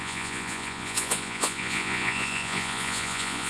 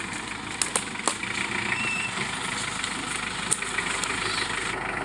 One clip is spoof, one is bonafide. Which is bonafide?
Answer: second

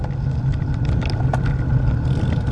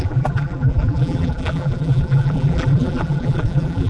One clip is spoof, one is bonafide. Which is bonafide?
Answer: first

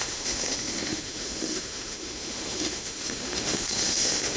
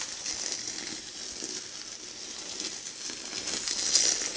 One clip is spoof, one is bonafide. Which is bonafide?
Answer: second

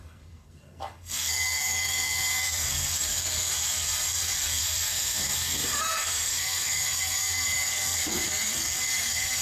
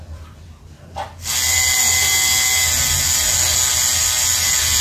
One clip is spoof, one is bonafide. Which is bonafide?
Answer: second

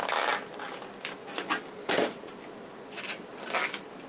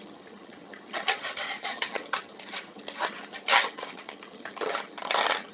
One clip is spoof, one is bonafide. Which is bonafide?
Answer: first